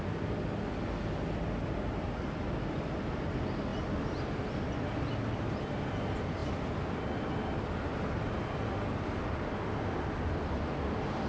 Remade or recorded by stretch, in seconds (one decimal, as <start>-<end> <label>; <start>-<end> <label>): 0.0-11.3 recorded

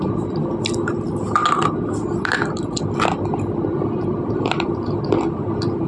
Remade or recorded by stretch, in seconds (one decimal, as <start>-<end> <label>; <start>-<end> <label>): 0.0-5.9 recorded